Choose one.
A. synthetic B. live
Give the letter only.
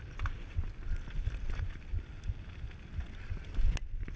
B